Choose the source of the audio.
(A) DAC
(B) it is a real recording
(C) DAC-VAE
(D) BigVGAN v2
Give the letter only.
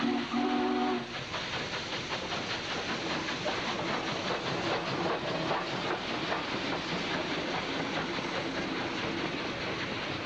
B